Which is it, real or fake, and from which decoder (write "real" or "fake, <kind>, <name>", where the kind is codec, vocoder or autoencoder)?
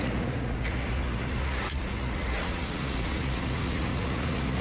fake, vocoder, Vocos